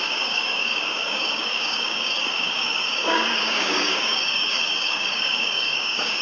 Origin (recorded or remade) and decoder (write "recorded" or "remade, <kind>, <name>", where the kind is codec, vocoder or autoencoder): remade, codec, DAC